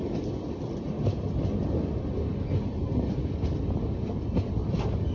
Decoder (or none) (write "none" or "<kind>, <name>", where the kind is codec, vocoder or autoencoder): none